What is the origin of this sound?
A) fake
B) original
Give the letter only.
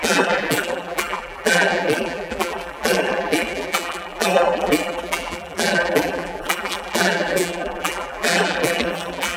A